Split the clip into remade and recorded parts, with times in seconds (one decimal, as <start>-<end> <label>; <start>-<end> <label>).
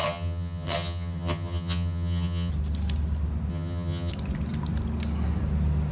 0.0-2.5 remade; 2.5-3.5 recorded; 3.5-4.1 remade; 4.1-5.9 recorded